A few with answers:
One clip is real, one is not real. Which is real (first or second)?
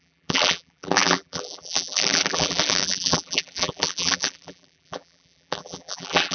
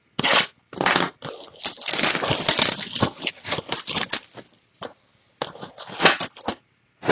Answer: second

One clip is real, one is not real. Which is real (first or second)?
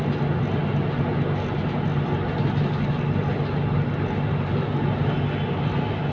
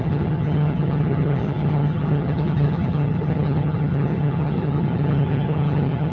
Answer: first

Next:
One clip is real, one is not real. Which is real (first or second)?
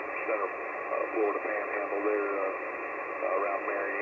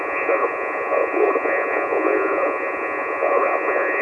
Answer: first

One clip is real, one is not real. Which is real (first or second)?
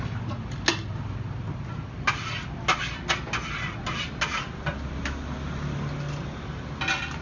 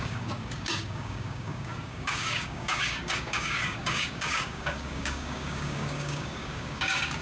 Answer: first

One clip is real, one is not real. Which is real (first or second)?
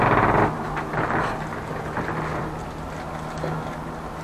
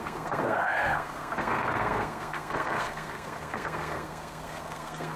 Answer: first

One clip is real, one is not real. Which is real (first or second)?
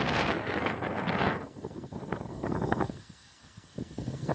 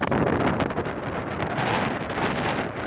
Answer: second